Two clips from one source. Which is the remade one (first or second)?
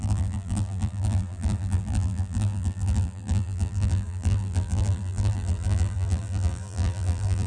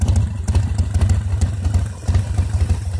first